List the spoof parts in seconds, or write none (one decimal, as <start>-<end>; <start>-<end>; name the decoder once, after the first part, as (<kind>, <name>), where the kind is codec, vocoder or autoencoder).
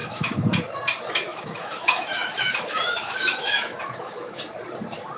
0.0-0.6 (autoencoder, DAC-VAE); 1.3-4.4